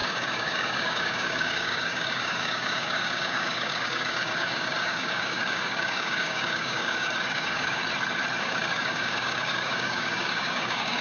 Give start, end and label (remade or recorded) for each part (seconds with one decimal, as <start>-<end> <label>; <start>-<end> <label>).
0.0-7.8 remade; 7.8-8.4 recorded; 8.4-11.0 remade